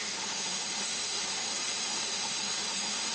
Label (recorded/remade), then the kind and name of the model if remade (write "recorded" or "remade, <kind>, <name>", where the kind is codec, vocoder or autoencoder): remade, autoencoder, DAC-VAE